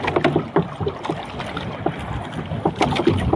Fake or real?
real